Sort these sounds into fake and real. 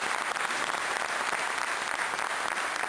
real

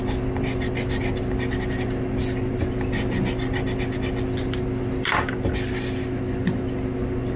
real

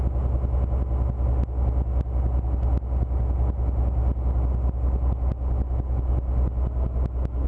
real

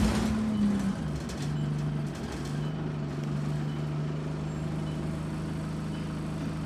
real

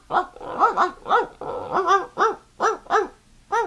real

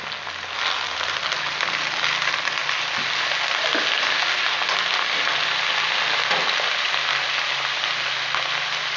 real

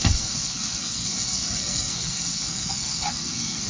fake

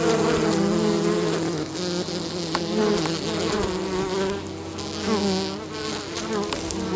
real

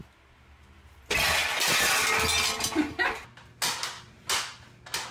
real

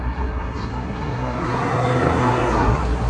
fake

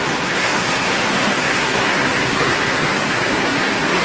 fake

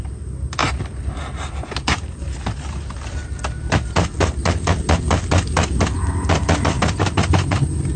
real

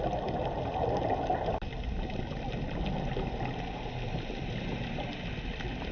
real